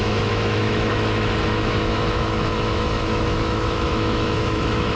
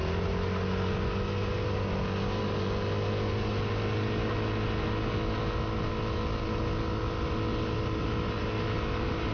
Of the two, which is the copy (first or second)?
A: first